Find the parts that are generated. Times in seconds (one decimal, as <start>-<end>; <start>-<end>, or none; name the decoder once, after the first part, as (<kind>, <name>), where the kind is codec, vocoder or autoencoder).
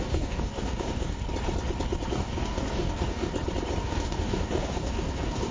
0.0-1.2 (codec, DAC); 2.1-3.3; 3.8-5.5